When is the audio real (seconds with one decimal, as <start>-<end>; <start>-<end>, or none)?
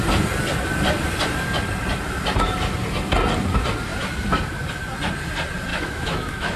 0.0-5.7